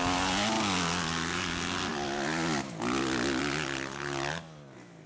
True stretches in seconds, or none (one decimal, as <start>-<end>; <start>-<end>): 0.0-5.1